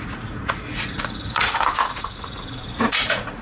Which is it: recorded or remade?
remade